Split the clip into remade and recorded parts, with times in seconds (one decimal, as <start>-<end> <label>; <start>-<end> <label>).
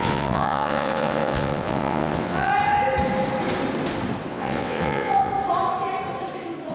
0.0-2.5 remade; 2.5-4.3 recorded; 4.3-5.3 remade; 5.3-6.7 recorded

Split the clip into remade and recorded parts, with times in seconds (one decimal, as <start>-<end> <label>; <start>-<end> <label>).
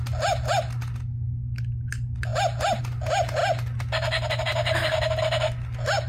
0.0-6.1 recorded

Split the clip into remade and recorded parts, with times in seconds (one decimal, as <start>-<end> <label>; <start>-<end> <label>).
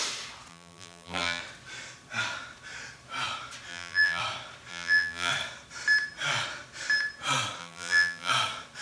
0.0-0.5 recorded; 0.5-1.4 remade; 1.4-3.7 recorded; 3.7-4.2 remade; 4.2-4.7 recorded; 4.7-5.3 remade; 5.3-7.6 recorded; 7.6-8.3 remade; 8.3-8.8 recorded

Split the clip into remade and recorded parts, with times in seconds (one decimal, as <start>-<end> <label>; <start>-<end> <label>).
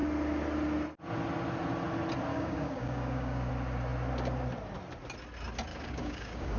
0.0-2.3 recorded; 2.3-3.5 remade; 3.5-5.7 recorded; 5.7-6.6 remade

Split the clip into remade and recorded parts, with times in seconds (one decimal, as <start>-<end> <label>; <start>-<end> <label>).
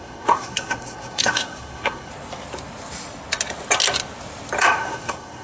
0.0-2.1 remade; 2.1-4.6 recorded; 4.6-5.4 remade